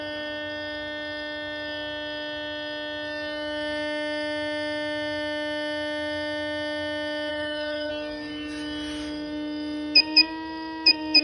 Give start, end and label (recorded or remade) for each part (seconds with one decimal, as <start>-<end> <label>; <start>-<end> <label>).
0.0-7.3 recorded; 7.3-7.9 remade; 7.9-11.2 recorded